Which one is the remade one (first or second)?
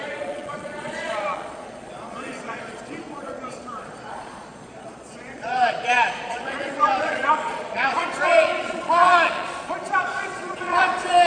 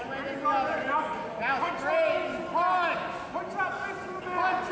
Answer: first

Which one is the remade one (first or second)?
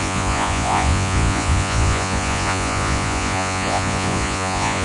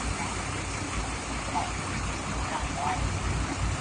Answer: first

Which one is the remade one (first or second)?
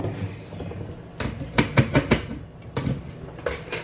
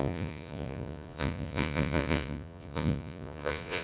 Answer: second